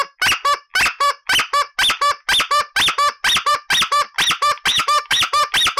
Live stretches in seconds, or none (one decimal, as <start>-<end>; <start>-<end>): 0.0-4.7; 5.2-5.8